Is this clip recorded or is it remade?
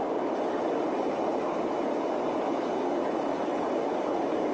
recorded